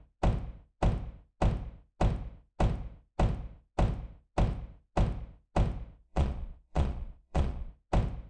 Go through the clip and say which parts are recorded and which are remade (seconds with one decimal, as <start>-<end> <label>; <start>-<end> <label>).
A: 0.0-6.0 recorded; 6.0-7.7 remade; 7.7-8.3 recorded